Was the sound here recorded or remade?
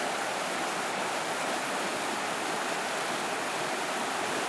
recorded